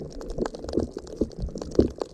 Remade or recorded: recorded